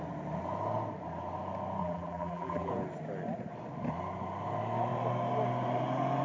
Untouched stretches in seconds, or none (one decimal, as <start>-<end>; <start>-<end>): 0.0-1.8; 2.7-6.2